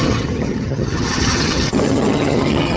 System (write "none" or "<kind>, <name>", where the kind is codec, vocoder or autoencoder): vocoder, HiFi-GAN